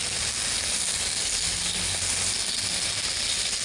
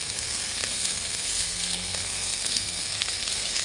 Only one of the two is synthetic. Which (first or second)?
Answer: second